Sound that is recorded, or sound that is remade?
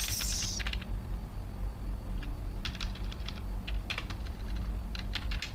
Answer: recorded